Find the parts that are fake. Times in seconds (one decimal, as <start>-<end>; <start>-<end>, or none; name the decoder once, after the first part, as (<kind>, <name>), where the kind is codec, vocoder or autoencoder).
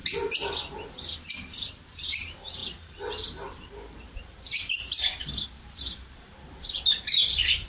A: 1.3-7.7 (vocoder, BigVGAN v2)